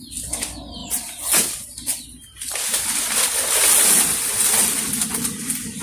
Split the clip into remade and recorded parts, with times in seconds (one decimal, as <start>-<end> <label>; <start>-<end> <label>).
0.0-5.8 recorded